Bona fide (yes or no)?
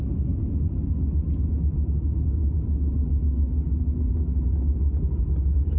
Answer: yes